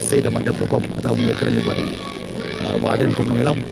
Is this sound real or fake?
fake